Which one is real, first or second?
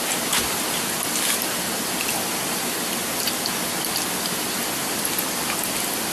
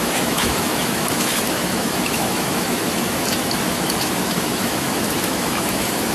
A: first